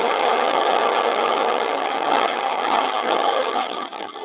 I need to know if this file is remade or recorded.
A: remade